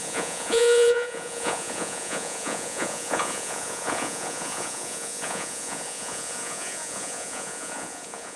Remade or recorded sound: remade